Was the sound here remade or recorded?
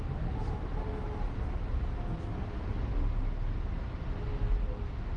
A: recorded